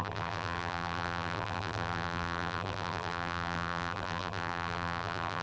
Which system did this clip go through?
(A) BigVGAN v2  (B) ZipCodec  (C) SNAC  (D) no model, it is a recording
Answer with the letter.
A